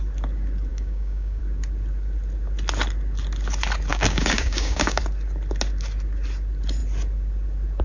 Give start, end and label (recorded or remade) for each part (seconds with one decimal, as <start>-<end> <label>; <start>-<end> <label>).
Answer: 0.0-0.7 recorded; 0.7-1.4 remade; 1.4-3.9 recorded; 3.9-5.0 remade; 5.0-7.8 recorded